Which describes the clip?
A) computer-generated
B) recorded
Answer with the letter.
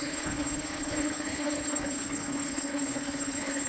A